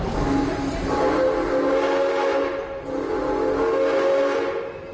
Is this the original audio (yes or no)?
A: yes